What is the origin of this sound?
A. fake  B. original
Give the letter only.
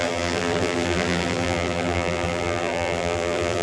A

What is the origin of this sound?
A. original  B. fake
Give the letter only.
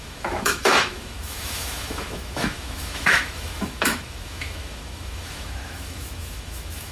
B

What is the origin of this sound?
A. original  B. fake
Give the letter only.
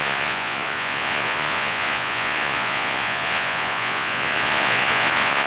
B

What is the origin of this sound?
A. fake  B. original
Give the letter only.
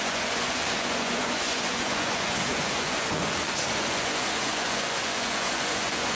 A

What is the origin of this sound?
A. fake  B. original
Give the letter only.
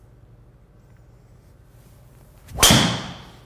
B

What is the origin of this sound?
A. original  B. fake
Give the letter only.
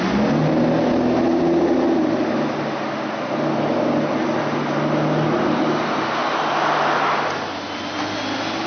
A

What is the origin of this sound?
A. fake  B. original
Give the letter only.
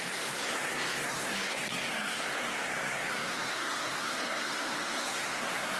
A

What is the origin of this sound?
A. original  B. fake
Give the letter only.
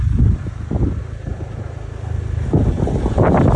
A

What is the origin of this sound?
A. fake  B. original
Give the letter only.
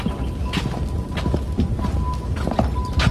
B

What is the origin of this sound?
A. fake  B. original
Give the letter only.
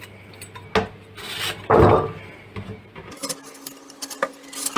B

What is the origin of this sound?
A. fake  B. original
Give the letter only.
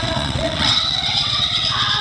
A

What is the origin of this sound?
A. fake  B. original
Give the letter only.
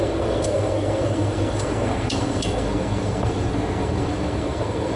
A